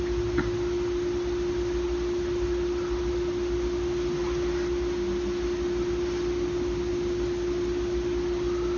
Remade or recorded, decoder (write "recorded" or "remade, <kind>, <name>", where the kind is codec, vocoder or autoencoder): recorded